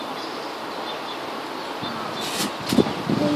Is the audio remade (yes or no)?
no